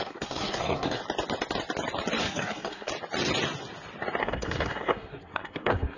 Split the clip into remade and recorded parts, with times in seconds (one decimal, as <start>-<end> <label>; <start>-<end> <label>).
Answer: 0.0-1.0 remade; 1.0-2.2 recorded; 2.2-2.9 remade; 2.9-4.2 recorded; 4.2-6.0 remade